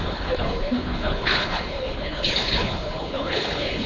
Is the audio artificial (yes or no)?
yes